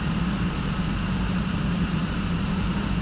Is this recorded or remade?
remade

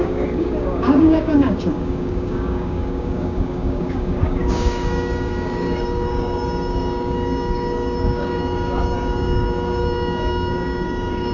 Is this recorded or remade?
remade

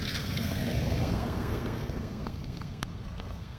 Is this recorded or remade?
remade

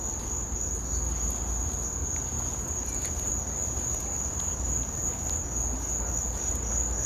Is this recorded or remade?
recorded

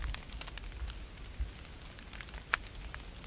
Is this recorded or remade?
recorded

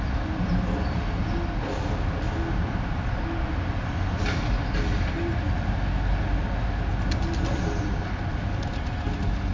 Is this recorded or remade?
recorded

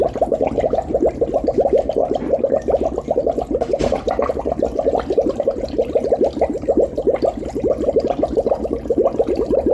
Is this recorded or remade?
recorded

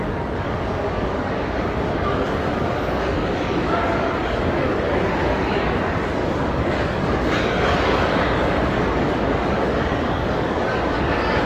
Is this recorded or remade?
remade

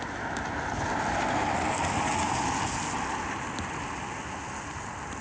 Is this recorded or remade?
recorded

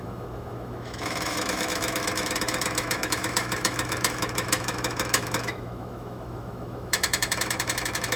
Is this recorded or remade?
remade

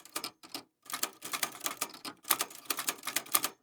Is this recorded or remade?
remade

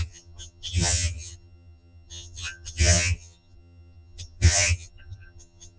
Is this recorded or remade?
remade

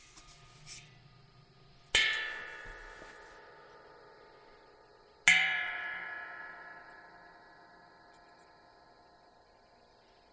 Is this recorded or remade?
recorded